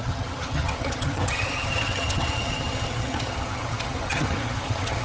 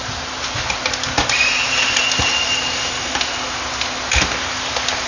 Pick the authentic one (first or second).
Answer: second